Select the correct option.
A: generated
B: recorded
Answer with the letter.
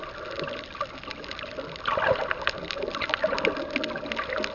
B